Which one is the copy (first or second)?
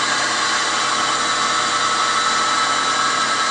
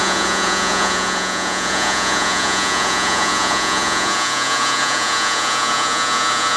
second